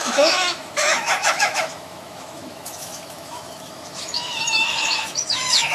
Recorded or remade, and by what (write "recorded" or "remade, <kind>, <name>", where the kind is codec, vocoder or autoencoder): remade, autoencoder, DAC-VAE